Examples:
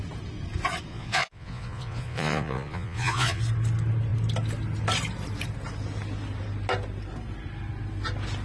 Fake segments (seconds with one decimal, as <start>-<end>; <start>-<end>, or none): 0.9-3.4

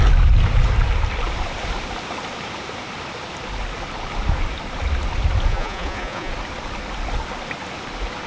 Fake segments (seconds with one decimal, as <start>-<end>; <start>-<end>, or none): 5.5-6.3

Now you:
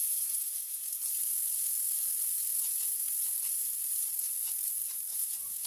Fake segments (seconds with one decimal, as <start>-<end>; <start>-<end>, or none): 0.0-1.0; 2.5-3.1; 5.1-5.7